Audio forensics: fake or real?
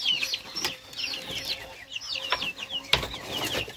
real